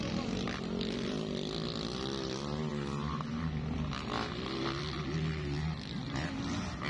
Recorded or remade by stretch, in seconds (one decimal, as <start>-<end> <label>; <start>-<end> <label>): 0.0-6.9 recorded